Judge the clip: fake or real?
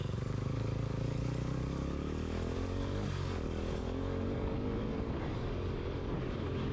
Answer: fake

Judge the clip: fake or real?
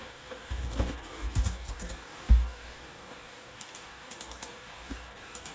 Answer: fake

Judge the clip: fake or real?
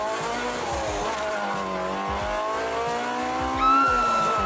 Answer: real